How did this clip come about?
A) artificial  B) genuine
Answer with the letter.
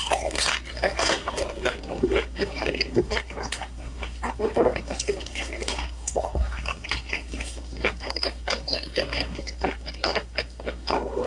A